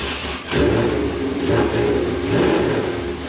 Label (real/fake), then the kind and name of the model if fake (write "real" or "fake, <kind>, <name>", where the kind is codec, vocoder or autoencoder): real